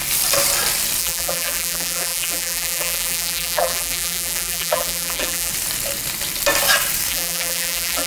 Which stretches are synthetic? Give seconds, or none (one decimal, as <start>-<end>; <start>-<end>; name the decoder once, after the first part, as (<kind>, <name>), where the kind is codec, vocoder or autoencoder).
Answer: 1.0-5.5 (vocoder, BigVGAN v2); 7.1-8.1